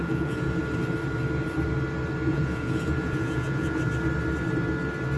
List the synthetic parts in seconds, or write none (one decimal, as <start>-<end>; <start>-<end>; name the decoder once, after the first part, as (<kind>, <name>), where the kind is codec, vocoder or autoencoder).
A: 0.0-0.6 (vocoder, Vocos); 2.3-3.8